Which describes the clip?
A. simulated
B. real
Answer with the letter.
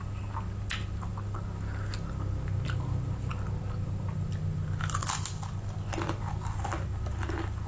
B